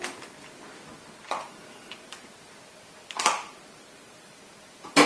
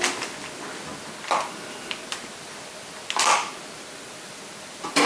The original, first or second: second